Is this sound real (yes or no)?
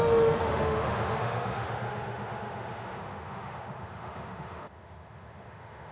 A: no